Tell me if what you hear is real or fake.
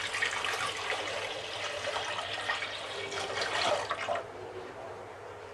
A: real